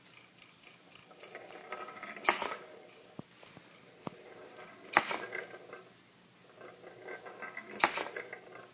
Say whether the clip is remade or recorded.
recorded